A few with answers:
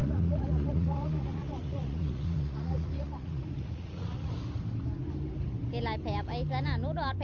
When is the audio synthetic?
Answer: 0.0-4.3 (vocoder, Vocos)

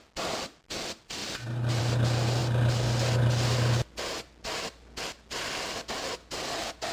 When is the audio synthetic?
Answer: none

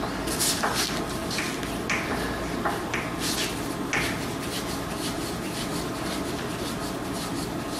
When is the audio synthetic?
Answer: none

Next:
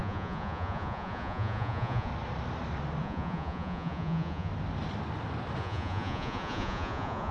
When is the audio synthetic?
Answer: 0.0-2.1 (vocoder, Vocos); 3.0-4.5; 5.6-7.3

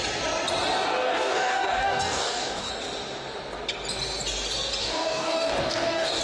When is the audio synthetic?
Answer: 1.0-2.7 (codec, DAC); 4.8-6.2

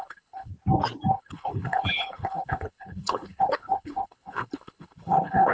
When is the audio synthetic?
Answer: 0.0-0.5 (codec, HILCodec); 1.1-5.5

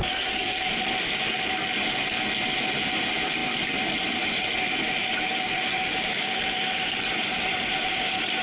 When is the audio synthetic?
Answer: 0.0-0.7 (codec, DAC)

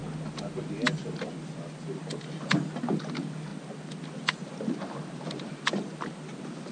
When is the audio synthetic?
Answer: none